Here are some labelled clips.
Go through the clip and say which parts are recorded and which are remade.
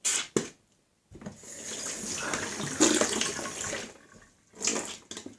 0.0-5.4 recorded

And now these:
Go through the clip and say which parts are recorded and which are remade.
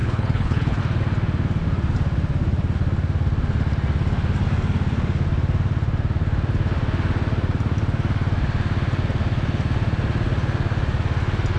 0.0-0.8 remade; 0.8-11.6 recorded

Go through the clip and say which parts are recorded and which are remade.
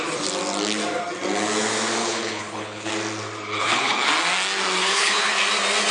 0.0-2.0 recorded; 2.0-2.9 remade; 2.9-3.5 recorded; 3.5-4.1 remade; 4.1-4.8 recorded; 4.8-5.4 remade; 5.4-5.9 recorded